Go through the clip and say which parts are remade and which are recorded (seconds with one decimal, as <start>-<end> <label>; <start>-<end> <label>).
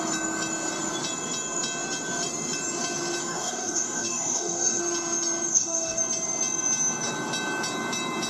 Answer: 0.0-3.2 recorded; 3.2-4.8 remade; 4.8-5.5 recorded; 5.5-6.0 remade; 6.0-8.3 recorded